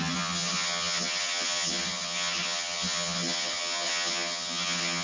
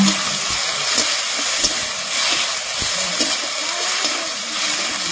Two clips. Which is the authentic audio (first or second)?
second